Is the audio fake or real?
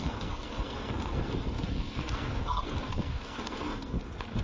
fake